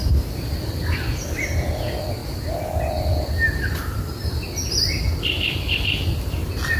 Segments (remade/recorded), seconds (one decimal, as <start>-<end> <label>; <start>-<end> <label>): 0.0-6.8 recorded